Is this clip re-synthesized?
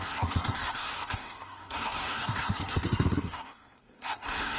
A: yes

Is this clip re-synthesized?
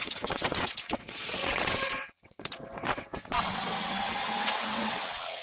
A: yes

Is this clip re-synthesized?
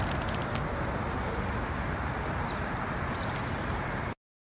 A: no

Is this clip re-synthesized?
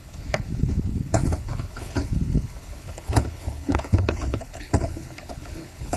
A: yes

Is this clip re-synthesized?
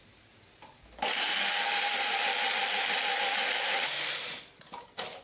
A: no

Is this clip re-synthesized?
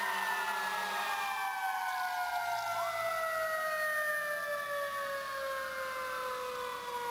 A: no